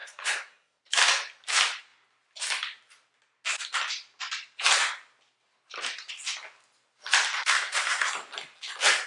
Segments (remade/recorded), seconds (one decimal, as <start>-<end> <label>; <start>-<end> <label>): 0.0-0.8 remade; 0.8-7.4 recorded; 7.4-8.1 remade; 8.1-9.1 recorded